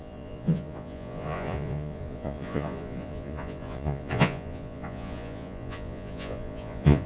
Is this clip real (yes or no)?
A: no